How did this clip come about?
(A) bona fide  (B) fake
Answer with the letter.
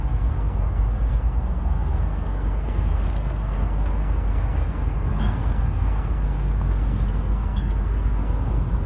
B